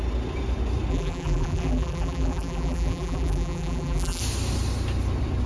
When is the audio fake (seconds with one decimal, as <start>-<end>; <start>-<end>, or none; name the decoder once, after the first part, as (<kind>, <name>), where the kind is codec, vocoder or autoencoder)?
0.9-4.2 (vocoder, BigVGAN v2)